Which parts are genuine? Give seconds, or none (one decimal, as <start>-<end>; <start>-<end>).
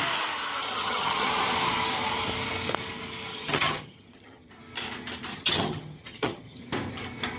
0.0-0.6; 1.3-3.3; 4.5-5.3; 6.7-7.4